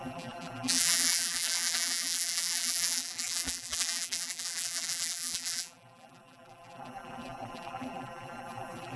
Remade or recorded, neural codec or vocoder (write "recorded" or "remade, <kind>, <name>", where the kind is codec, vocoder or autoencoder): remade, vocoder, BigVGAN v2